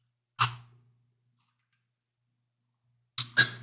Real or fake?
real